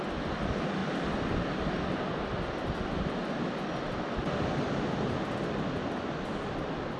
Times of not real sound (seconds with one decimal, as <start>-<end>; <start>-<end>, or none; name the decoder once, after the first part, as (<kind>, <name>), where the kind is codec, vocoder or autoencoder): none